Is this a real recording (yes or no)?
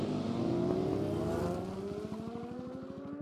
yes